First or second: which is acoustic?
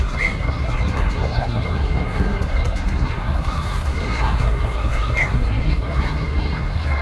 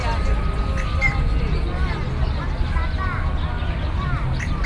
second